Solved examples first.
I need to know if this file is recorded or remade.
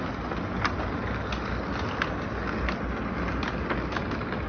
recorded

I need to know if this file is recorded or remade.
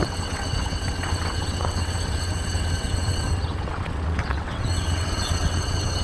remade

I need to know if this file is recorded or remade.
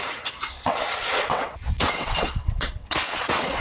remade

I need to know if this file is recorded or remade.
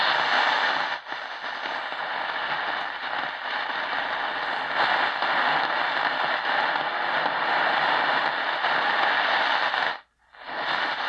recorded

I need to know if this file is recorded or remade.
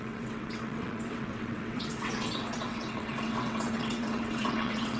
remade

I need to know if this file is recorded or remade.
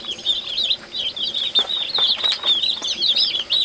recorded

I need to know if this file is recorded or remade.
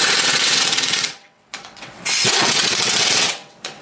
remade